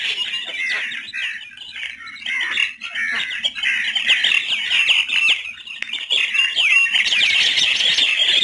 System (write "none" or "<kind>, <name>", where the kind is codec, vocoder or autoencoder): none